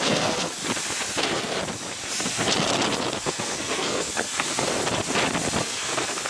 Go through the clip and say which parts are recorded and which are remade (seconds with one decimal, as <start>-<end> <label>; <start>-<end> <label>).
0.0-0.6 remade; 0.6-1.2 recorded; 1.2-1.6 remade; 1.6-3.2 recorded; 3.2-4.8 remade; 4.8-5.6 recorded; 5.6-6.3 remade